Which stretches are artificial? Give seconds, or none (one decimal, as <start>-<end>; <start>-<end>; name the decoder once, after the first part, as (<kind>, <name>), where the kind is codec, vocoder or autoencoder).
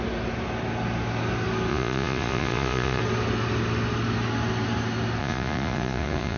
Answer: 1.7-3.0 (vocoder, Vocos); 5.2-6.4